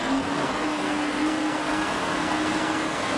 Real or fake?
fake